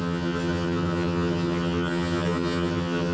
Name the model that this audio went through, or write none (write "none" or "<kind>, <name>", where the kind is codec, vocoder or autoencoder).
vocoder, HiFi-GAN